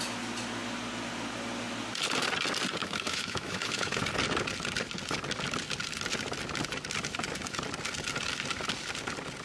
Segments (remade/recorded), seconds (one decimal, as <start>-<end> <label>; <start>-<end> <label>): 0.0-2.8 recorded; 2.8-4.0 remade; 4.0-9.4 recorded